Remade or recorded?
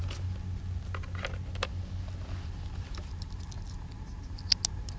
recorded